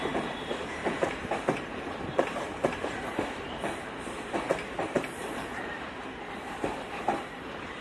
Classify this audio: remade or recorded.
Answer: remade